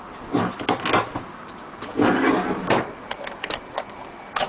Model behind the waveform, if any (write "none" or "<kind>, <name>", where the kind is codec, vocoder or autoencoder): none